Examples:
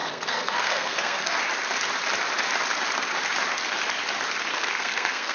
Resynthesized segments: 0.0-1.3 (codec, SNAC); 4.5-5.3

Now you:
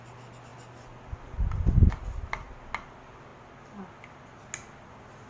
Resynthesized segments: none

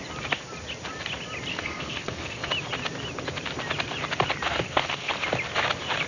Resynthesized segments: 1.5-2.5 (codec, SNAC); 4.5-5.1

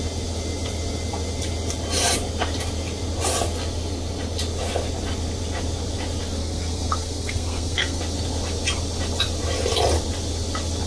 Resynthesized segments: 6.4-8.0 (codec, SNAC)

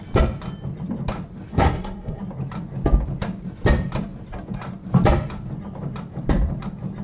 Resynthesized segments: 1.5-2.2 (codec, SNAC)